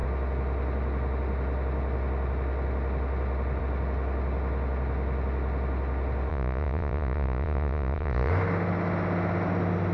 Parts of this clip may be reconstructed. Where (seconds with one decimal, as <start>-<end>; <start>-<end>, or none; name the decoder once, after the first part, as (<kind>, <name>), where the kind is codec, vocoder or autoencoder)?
6.3-8.3 (vocoder, Vocos)